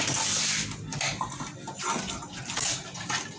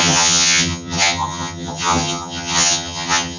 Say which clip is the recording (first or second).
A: first